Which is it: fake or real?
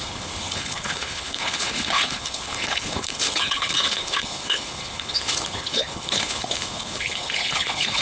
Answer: fake